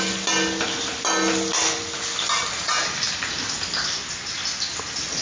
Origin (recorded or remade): recorded